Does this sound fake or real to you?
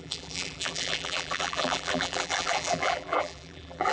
fake